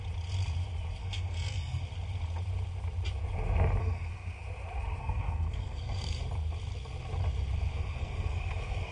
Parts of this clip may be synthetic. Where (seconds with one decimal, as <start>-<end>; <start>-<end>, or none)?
1.0-1.8; 3.8-4.4; 5.0-6.2; 7.7-8.9